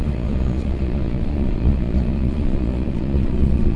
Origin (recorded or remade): remade